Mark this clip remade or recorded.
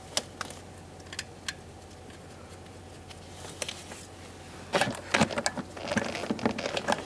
recorded